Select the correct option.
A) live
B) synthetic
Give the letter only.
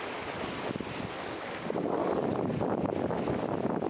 A